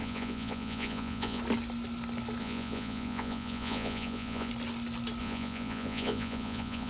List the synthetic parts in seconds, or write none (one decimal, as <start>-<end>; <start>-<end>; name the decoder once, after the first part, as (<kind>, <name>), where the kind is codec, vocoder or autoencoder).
0.0-1.4 (vocoder, Vocos); 2.4-4.5; 5.2-6.9

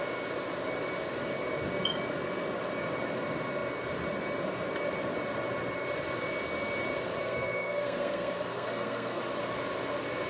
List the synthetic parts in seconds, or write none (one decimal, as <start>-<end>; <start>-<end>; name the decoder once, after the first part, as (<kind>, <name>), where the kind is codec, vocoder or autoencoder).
7.2-9.2 (codec, SNAC)

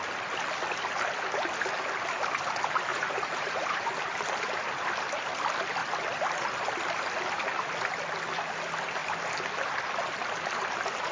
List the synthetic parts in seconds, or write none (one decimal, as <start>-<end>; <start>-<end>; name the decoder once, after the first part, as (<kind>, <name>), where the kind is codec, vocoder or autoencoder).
2.9-3.8 (vocoder, Vocos)

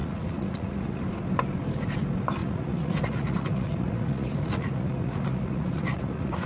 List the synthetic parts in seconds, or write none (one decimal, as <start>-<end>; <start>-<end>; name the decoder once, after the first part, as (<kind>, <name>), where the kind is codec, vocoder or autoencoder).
0.0-1.0 (vocoder, Vocos); 2.4-6.5

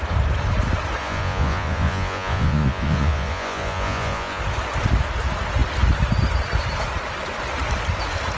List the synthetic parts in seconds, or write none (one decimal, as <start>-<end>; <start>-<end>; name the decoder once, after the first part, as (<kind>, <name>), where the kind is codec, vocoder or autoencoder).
1.0-4.4 (vocoder, Vocos)

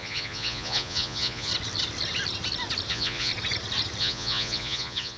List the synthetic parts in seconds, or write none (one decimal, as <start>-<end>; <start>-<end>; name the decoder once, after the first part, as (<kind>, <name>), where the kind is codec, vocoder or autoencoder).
0.0-1.5 (vocoder, Vocos); 2.9-3.3; 4.0-5.2

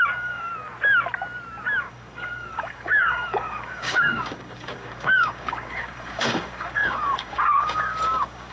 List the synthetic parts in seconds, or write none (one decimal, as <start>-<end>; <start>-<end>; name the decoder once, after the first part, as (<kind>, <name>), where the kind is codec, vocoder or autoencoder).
0.0-0.5 (codec, DAC); 1.8-8.5